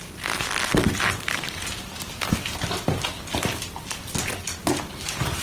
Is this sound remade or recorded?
recorded